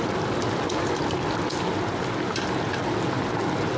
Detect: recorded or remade recorded